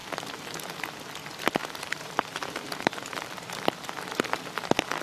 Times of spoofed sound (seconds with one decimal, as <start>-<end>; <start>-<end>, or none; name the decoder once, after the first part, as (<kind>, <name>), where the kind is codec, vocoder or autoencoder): 1.6-3.6 (vocoder, BigVGAN v2)